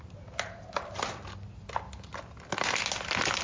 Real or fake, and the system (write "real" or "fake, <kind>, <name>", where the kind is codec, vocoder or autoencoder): real